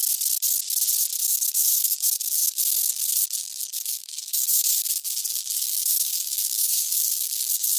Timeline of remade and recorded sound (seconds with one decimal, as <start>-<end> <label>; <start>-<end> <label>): 0.0-1.2 recorded; 1.2-7.8 remade